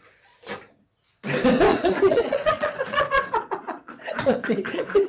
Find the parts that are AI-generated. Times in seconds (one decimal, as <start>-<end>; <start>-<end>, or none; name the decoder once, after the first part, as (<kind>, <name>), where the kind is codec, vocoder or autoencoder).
1.7-5.1 (vocoder, Vocos)